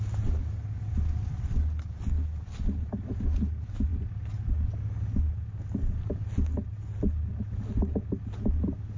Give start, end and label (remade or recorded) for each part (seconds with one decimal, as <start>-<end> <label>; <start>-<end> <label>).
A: 0.0-9.0 recorded